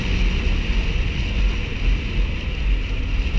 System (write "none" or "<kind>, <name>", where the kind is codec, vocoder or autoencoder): vocoder, BigVGAN v2